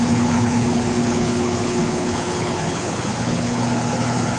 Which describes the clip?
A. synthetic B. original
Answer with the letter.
A